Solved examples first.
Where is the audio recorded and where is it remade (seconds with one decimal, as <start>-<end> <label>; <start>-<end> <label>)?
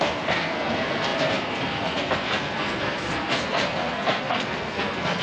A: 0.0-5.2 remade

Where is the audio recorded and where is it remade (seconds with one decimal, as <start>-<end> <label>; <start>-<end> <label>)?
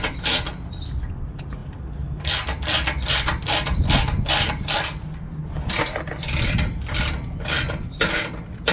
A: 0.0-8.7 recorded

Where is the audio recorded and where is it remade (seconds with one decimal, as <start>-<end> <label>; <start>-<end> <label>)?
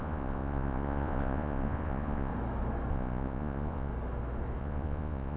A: 0.0-2.3 remade; 2.3-2.9 recorded; 2.9-3.9 remade; 3.9-4.6 recorded; 4.6-5.4 remade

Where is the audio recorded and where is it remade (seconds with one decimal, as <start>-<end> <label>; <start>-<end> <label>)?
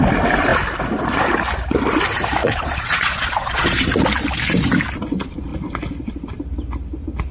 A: 0.0-2.4 recorded; 2.4-4.0 remade; 4.0-7.3 recorded